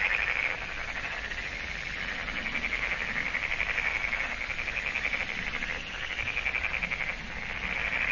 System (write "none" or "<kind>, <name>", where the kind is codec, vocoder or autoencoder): none